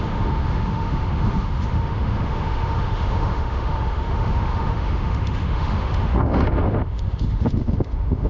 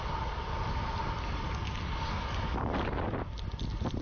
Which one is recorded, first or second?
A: second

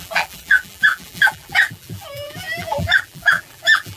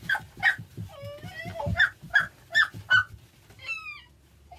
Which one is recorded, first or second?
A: second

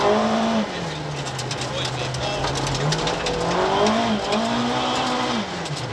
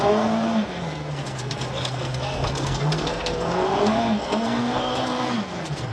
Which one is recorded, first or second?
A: first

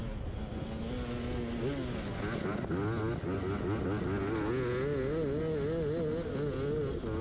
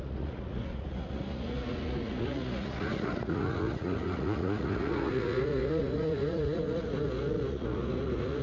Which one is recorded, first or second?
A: first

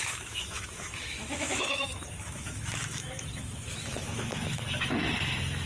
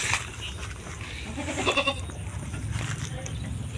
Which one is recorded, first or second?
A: second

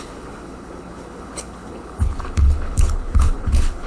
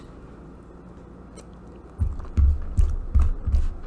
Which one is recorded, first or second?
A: second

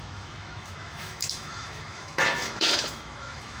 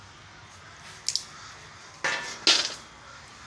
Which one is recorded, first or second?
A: second